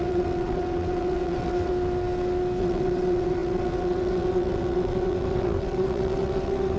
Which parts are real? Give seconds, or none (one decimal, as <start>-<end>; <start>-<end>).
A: 1.7-2.6